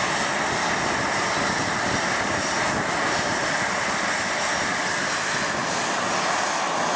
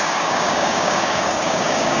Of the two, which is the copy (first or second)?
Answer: second